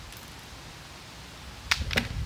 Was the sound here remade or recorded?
remade